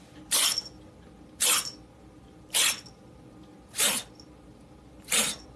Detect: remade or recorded recorded